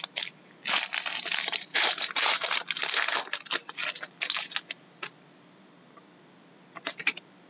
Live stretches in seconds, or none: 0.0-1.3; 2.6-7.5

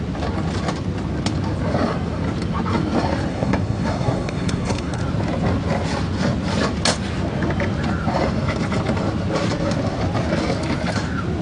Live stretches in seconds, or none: 0.0-3.3; 5.0-11.4

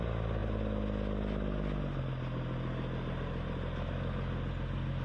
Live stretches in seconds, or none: 0.0-5.0

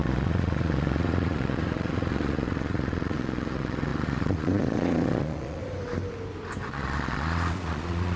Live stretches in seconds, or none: 5.6-6.7

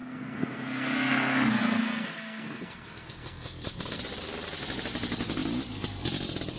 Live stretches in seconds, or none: 4.0-6.6